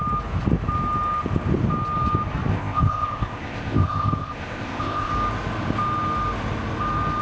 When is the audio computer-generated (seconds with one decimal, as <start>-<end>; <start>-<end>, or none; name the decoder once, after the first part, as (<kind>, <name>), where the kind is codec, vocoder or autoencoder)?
2.5-5.1 (codec, ZipCodec)